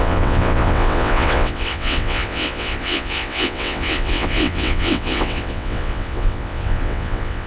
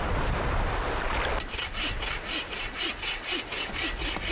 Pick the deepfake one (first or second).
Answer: first